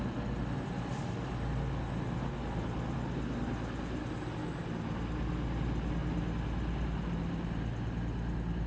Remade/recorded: recorded